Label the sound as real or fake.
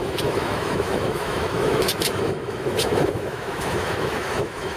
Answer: fake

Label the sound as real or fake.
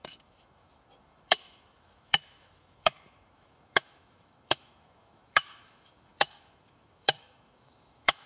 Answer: fake